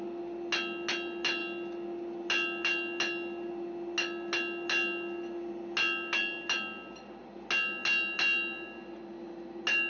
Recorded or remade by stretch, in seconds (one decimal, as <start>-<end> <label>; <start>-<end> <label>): 0.0-9.9 recorded